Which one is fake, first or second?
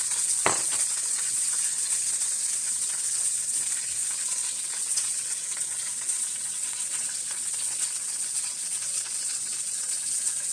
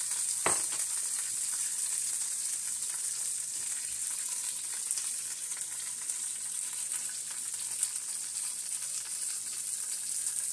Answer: first